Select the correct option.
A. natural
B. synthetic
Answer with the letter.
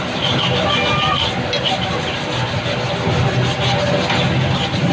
A